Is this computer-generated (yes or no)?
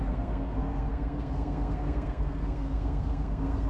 yes